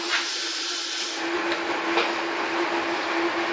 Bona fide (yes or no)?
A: yes